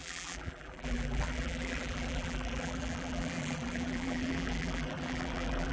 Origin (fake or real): fake